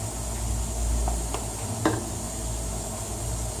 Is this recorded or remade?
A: recorded